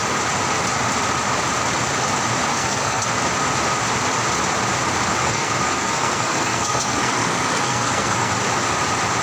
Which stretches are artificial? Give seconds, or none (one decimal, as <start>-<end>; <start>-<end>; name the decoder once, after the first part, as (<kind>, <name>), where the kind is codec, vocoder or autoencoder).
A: 2.5-3.1 (codec, SNAC); 5.2-8.3